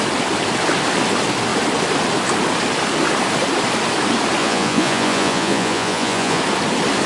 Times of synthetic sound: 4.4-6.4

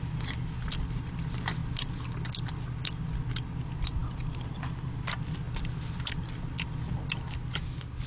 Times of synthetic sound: 4.0-5.4

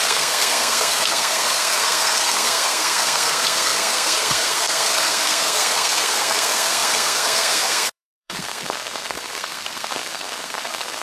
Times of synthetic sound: 0.0-11.0

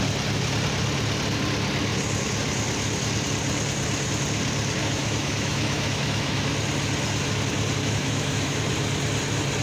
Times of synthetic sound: 4.8-6.5; 7.8-8.6

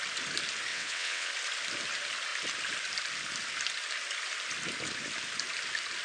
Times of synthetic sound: 0.7-1.3